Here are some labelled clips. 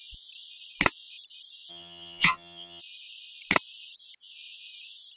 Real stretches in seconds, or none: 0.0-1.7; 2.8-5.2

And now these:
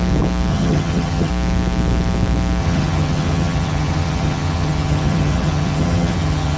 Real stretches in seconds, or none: 0.0-0.5; 1.3-2.6

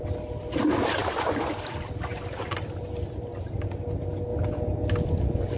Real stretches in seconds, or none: 0.0-5.6

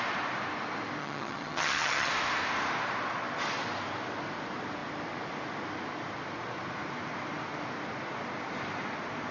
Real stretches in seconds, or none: 0.0-1.0; 2.1-9.3